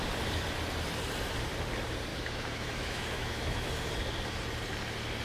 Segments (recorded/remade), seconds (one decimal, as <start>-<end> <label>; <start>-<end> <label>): 0.0-2.1 recorded; 2.1-3.7 remade; 3.7-5.2 recorded